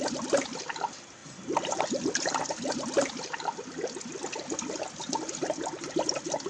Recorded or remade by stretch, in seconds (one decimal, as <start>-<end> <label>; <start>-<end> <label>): 0.0-6.5 recorded